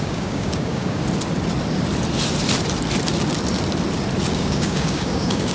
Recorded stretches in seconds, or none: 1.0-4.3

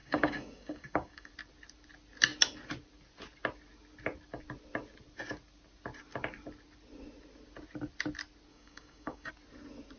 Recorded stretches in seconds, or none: 1.3-8.5; 9.3-10.0

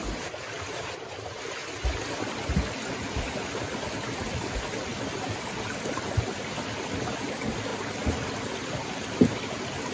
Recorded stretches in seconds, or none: 0.0-9.9